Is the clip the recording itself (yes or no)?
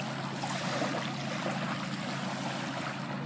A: yes